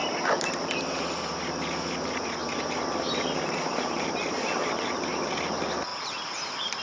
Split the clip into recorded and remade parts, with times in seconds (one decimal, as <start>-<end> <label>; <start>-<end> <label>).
0.0-0.6 remade; 0.6-2.4 recorded; 2.4-4.6 remade; 4.6-5.9 recorded; 5.9-6.8 remade